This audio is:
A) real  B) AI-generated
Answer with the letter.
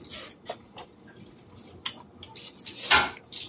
A